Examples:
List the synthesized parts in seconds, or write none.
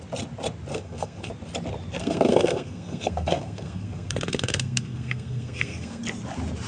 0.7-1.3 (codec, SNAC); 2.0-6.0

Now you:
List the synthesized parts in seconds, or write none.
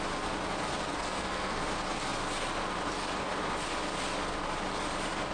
0.9-1.6 (codec, SNAC)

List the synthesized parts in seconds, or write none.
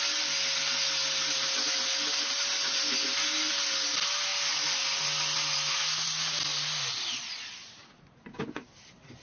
none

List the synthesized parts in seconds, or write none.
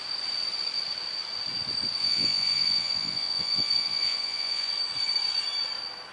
2.0-4.7 (vocoder, Vocos)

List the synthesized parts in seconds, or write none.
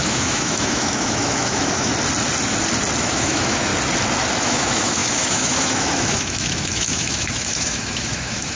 0.0-1.9 (autoencoder, DAC-VAE); 3.0-3.7; 4.4-8.5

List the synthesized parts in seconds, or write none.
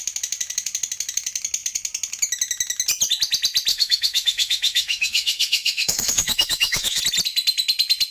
3.7-7.0 (autoencoder, DAC-VAE)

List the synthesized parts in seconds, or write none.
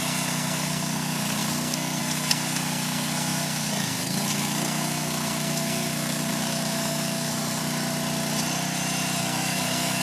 0.0-7.6 (codec, SNAC); 9.2-10.0